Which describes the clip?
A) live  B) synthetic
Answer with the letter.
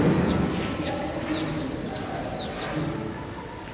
A